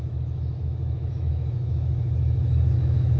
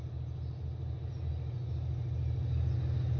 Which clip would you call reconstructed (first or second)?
first